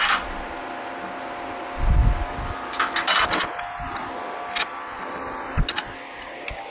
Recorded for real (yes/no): yes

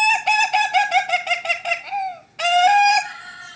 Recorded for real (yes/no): yes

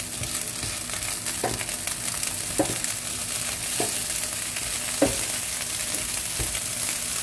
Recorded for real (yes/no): yes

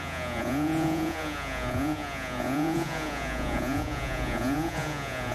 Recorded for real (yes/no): no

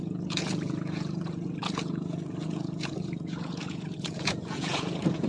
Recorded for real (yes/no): no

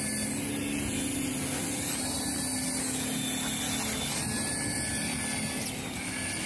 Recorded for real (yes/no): yes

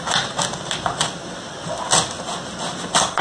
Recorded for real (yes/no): yes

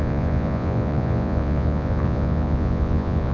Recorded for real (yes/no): no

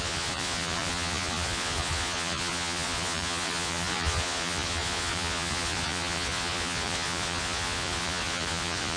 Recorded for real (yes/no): no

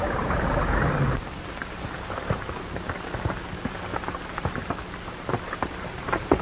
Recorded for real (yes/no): yes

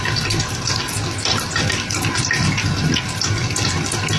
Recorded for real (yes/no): yes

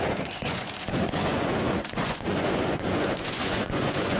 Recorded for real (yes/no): no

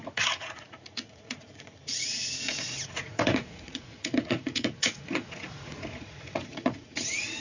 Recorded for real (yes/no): no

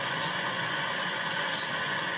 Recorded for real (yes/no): no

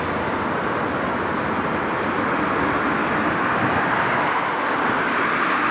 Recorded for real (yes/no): yes